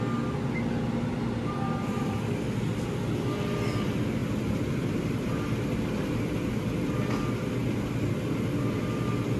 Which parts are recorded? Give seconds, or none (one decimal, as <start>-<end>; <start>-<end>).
0.0-9.4